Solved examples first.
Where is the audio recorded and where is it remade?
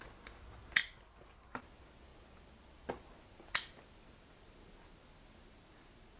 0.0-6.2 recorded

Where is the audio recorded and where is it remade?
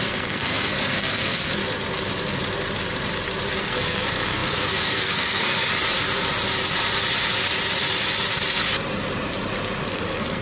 0.0-1.6 remade; 1.6-3.6 recorded; 3.6-5.7 remade; 5.7-9.9 recorded; 9.9-10.4 remade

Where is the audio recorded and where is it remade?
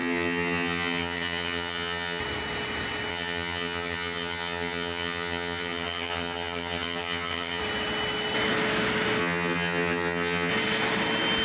0.0-2.2 remade; 2.2-3.1 recorded; 3.1-7.6 remade; 7.6-9.2 recorded; 9.2-10.5 remade; 10.5-11.4 recorded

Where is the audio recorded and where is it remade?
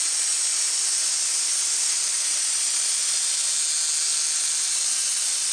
0.0-5.5 recorded